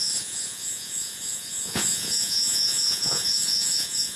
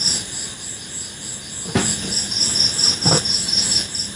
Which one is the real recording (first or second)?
second